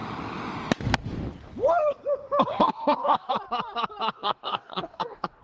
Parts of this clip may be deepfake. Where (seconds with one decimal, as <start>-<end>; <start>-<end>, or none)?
2.5-3.3; 4.1-5.4